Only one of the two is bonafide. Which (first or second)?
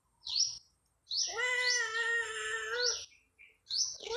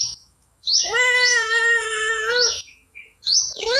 first